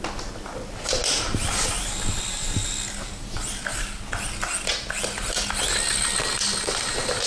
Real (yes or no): yes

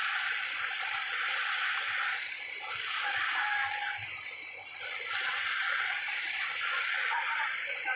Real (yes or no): yes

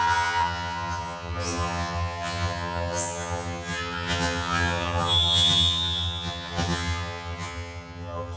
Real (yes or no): no